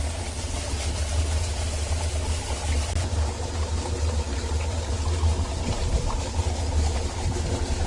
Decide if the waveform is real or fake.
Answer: real